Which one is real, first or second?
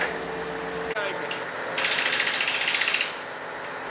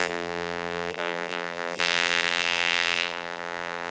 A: first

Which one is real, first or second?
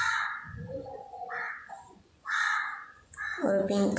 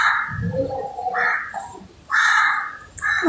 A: second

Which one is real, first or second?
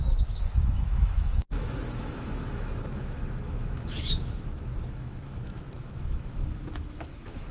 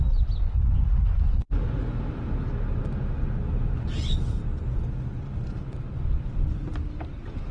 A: second